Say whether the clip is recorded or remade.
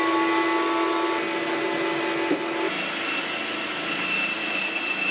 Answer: recorded